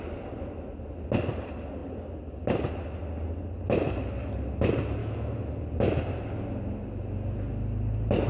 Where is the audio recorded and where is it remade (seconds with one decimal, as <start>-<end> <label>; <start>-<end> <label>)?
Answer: 0.0-5.0 recorded; 5.0-5.5 remade; 5.5-8.3 recorded